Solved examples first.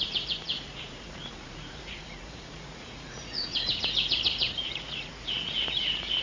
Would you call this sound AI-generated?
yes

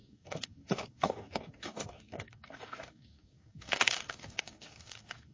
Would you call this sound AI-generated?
yes